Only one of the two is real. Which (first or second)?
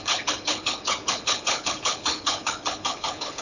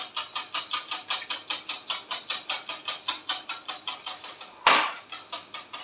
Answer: second